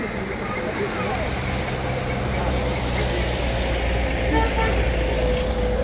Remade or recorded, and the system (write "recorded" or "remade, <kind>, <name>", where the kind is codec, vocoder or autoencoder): recorded